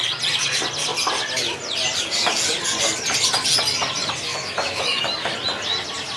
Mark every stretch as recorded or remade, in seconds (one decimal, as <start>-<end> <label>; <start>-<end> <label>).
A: 0.0-4.3 recorded; 4.3-5.0 remade; 5.0-6.2 recorded